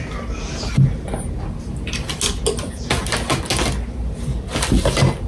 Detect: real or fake real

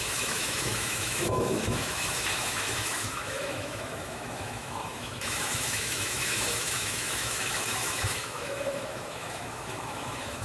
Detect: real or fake fake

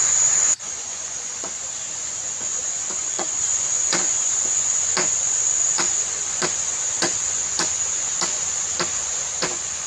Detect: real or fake fake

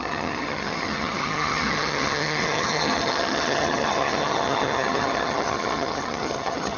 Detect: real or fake fake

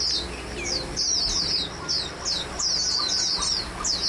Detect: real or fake real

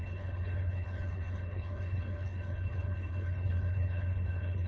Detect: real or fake fake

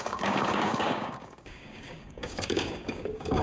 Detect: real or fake fake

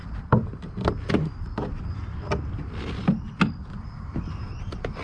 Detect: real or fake real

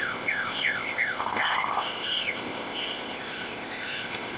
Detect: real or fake fake